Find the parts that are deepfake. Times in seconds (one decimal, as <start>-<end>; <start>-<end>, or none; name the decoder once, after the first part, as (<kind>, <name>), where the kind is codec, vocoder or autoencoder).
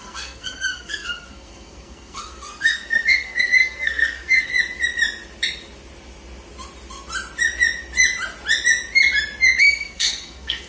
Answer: 0.0-4.5 (codec, SNAC); 9.6-10.7